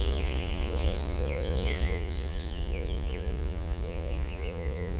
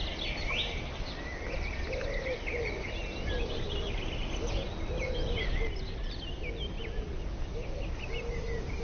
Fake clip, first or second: first